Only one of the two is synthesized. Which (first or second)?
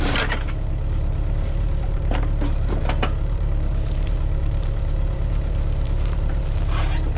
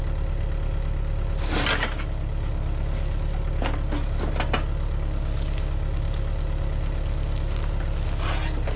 first